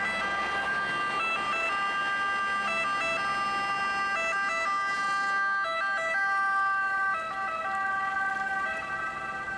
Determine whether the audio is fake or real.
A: real